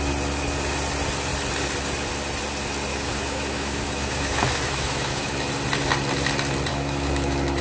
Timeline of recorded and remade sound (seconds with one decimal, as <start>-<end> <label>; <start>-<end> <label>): 0.0-2.9 recorded; 2.9-5.5 remade; 5.5-6.7 recorded; 6.7-7.6 remade